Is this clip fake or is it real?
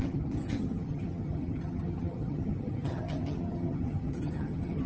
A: fake